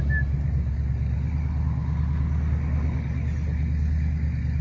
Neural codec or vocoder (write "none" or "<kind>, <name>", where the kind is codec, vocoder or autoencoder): none